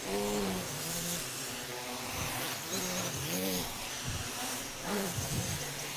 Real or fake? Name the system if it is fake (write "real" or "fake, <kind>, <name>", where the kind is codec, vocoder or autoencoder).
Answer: real